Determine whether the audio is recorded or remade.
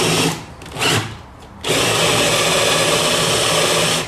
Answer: recorded